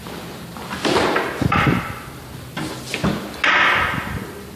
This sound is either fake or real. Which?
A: real